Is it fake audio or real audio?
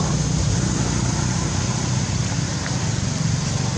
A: real